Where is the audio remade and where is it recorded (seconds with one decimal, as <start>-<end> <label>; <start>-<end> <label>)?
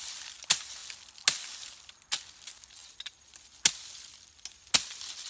0.0-5.3 recorded